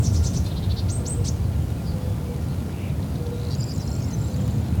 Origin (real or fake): real